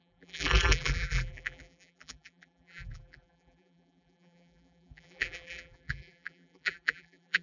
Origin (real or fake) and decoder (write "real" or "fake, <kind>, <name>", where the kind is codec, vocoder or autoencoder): fake, vocoder, BigVGAN v2